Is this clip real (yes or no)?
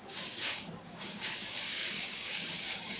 no